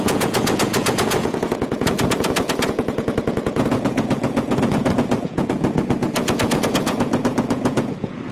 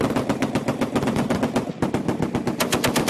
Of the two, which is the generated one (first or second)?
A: first